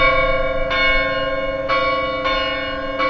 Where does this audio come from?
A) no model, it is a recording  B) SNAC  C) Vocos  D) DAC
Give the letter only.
A